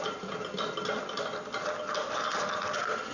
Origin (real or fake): real